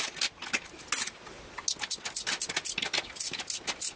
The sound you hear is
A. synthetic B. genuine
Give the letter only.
B